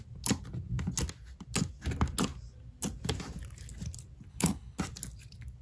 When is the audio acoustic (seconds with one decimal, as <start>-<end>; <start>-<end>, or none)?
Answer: 0.0-4.3; 4.8-5.6